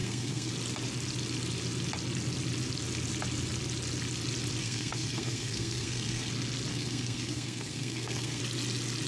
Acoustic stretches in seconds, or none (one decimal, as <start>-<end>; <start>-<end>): 0.5-4.6; 6.3-6.7; 8.4-9.1